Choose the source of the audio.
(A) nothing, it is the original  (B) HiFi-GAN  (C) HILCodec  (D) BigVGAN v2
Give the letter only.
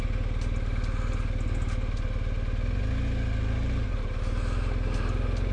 A